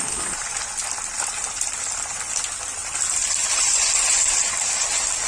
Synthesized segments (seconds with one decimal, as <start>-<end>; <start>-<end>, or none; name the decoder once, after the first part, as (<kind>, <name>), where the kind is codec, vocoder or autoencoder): none